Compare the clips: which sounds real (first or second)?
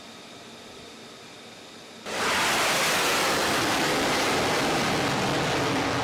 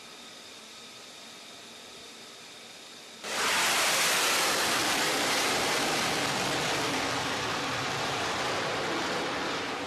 first